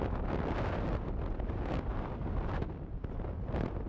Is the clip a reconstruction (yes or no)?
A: no